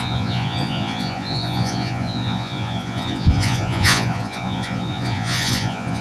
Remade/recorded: remade